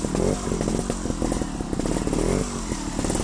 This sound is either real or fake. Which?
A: real